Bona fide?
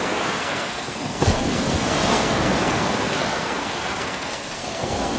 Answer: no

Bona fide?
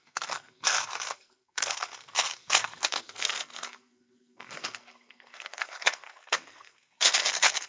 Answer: no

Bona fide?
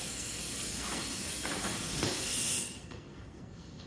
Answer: no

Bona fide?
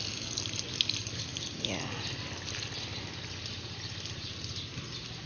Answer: yes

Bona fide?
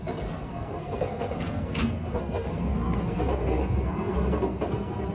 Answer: no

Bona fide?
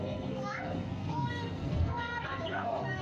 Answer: no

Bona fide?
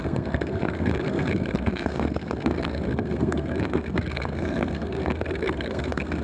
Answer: no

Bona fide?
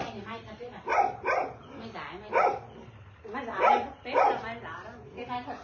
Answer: yes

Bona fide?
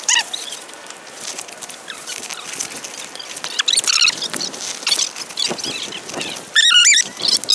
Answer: yes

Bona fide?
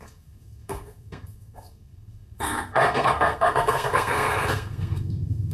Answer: no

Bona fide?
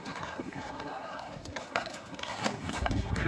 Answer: no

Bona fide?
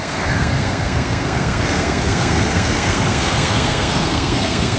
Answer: no